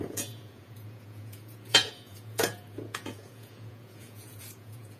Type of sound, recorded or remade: remade